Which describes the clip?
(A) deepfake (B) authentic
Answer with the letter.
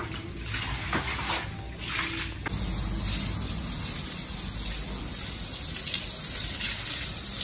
B